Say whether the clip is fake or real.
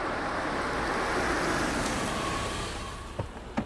real